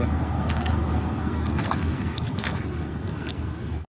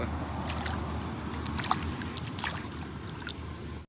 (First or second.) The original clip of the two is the second